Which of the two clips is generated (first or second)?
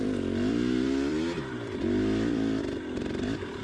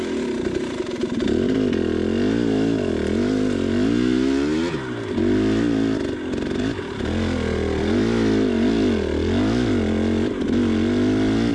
first